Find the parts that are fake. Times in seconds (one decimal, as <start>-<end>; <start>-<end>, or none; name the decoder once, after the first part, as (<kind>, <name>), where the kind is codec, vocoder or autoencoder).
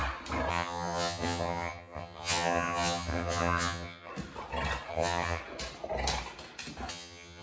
0.5-4.1 (vocoder, HiFi-GAN); 4.9-5.4; 6.9-7.4